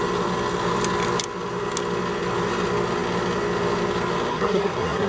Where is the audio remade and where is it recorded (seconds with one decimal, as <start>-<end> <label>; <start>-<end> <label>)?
0.0-4.3 recorded; 4.3-5.1 remade